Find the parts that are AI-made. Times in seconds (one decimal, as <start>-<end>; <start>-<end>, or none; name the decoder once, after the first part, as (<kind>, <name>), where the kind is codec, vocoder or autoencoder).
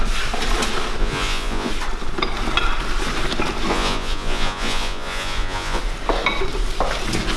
1.0-1.7 (vocoder, Vocos); 3.7-5.8